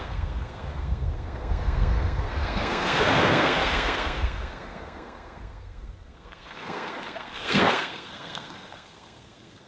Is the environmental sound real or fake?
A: fake